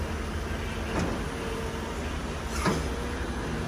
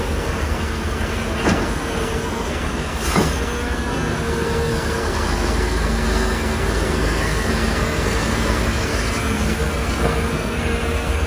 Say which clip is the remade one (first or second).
second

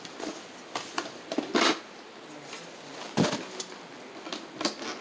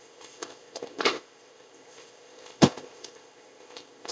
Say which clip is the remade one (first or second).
second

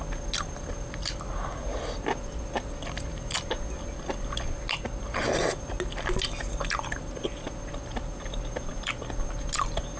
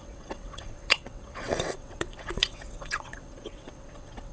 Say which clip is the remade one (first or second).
second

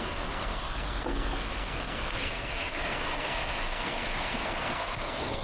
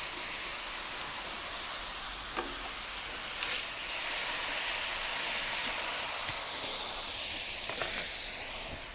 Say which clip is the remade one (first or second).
first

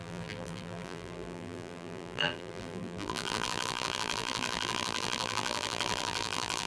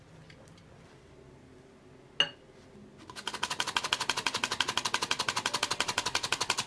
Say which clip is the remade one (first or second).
first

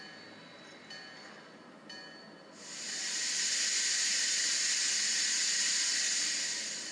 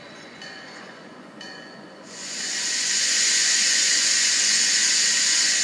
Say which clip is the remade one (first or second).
second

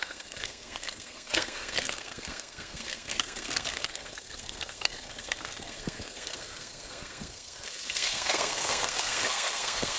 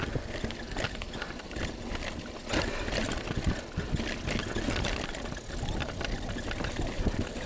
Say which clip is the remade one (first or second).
first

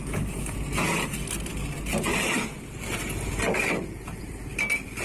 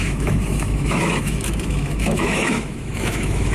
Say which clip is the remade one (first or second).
second